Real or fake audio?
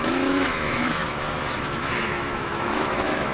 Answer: fake